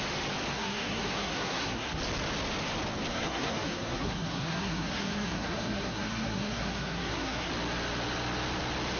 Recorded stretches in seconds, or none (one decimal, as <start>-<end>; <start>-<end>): 0.0-0.5; 2.0-3.1; 7.5-9.0

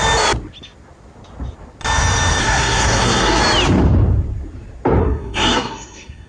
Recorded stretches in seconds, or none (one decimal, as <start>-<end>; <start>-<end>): 0.0-2.4; 3.4-5.0

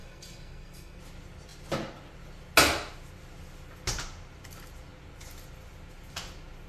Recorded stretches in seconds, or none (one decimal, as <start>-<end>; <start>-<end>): 1.0-6.7

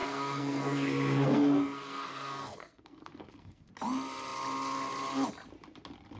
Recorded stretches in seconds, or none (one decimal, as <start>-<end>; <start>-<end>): 3.7-6.2

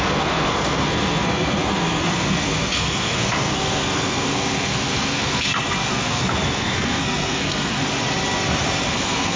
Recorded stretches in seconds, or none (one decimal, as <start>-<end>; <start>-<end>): 7.8-8.9

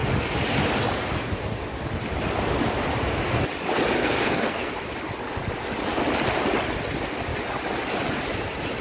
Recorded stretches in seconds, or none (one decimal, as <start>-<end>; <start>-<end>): 0.0-4.0; 4.7-8.8

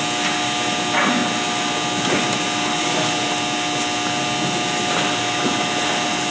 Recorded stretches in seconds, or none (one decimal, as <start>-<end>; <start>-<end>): 0.0-6.3